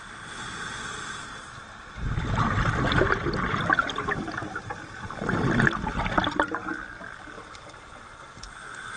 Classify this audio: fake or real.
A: real